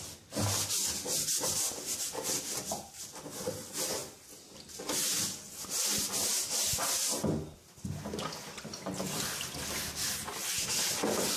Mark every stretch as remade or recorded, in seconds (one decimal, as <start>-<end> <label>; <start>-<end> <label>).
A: 0.0-11.4 recorded